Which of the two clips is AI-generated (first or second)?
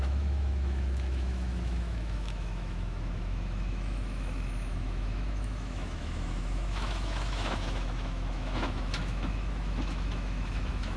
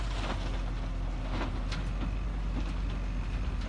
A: first